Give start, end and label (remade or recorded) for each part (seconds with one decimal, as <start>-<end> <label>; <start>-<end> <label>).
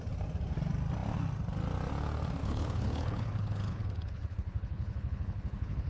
0.0-2.4 recorded; 2.4-5.9 remade